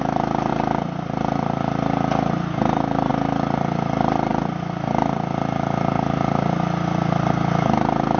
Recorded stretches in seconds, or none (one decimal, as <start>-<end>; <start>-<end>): 0.0-8.2